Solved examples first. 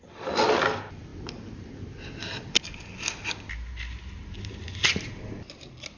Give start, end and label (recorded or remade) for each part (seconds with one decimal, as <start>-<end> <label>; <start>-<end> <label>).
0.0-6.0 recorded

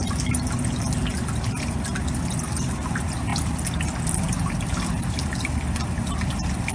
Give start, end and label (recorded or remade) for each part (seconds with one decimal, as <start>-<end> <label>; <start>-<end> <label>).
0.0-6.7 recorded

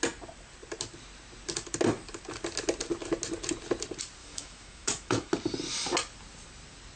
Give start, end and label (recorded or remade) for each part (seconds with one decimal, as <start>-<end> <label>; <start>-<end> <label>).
0.0-4.2 recorded; 4.2-5.3 remade; 5.3-7.0 recorded